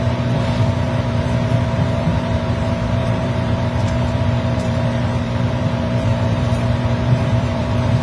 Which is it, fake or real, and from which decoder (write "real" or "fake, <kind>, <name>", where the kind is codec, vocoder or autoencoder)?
fake, vocoder, BigVGAN v2